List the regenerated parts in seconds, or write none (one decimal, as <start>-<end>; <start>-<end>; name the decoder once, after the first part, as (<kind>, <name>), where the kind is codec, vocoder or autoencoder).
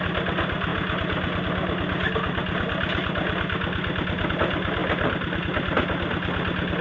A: none